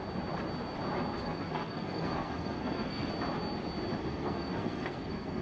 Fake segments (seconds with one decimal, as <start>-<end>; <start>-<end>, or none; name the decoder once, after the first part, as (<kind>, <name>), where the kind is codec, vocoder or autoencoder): 1.2-3.1 (codec, SNAC); 4.1-5.4